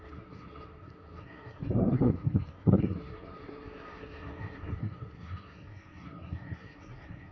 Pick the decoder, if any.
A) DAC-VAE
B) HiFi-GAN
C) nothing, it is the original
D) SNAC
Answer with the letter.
D